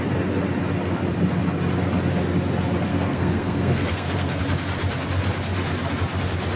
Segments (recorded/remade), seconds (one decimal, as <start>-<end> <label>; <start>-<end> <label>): 0.0-2.9 recorded; 2.9-4.4 remade; 4.4-6.6 recorded